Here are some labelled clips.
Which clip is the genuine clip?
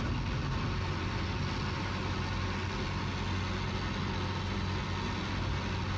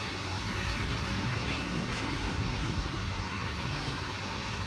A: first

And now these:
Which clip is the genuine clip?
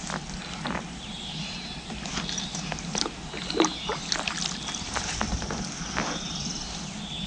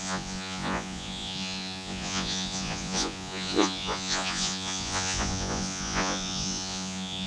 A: first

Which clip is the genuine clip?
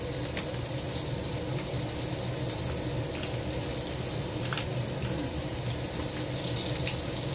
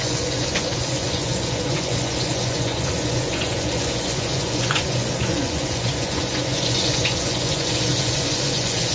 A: first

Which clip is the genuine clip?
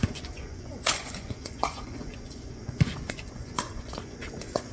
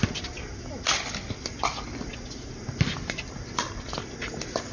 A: second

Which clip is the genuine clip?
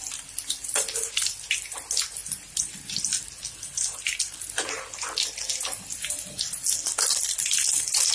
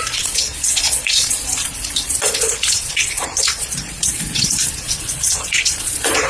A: first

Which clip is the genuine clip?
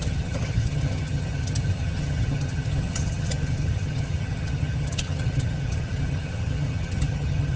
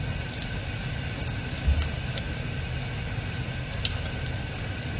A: second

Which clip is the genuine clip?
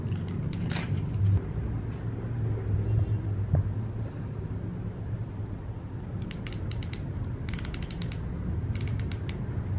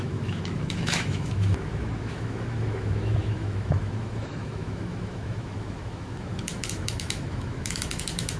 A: first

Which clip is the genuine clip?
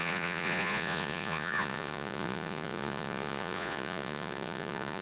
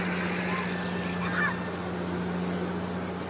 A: second